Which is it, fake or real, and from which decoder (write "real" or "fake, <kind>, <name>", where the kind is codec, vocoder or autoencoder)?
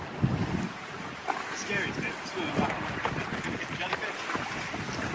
real